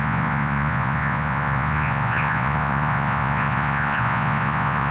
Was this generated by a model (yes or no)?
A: yes